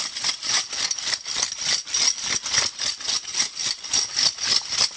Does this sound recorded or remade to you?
recorded